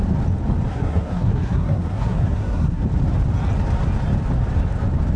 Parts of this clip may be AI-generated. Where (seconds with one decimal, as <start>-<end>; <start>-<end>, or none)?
0.7-2.8